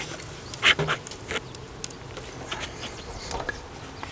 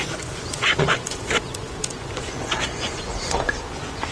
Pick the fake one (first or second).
second